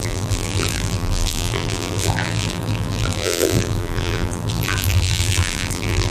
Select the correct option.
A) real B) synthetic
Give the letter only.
B